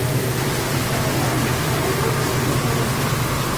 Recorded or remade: recorded